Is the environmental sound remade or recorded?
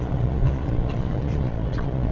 remade